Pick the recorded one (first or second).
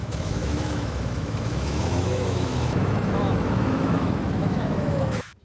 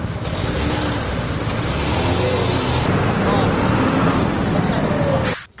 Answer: second